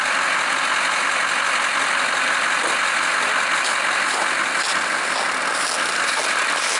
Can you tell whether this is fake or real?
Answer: real